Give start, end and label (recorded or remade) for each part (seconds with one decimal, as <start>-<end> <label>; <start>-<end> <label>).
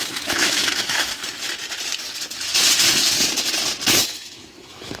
0.0-1.2 remade; 1.2-4.0 recorded; 4.0-5.0 remade